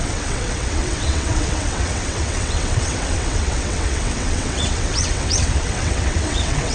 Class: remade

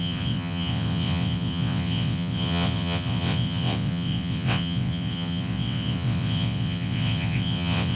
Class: remade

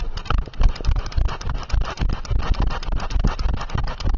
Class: recorded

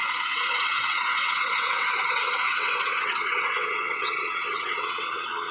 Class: remade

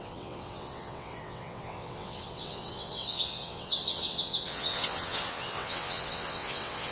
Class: remade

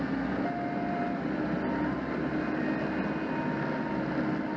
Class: recorded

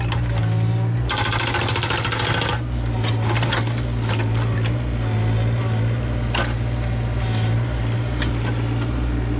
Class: recorded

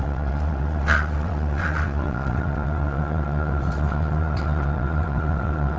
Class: remade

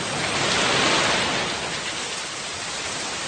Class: recorded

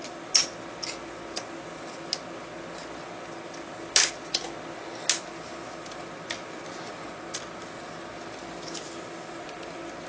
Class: recorded